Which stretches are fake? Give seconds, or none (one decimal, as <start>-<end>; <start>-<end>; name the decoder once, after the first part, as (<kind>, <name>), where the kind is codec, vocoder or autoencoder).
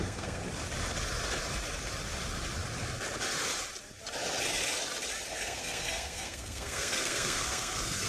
0.0-0.4 (codec, SNAC); 5.3-8.1